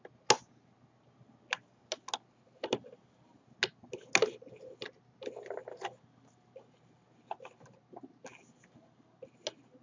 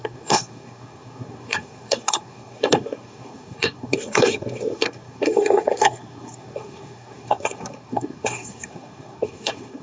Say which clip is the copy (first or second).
second